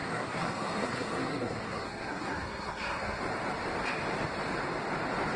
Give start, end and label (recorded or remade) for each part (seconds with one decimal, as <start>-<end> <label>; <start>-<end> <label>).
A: 0.0-3.2 remade; 3.2-5.4 recorded